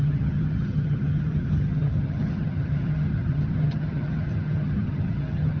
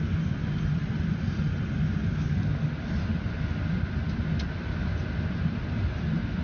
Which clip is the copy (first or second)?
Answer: first